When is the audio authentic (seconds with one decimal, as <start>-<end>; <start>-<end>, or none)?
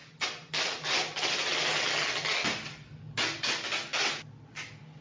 0.0-5.0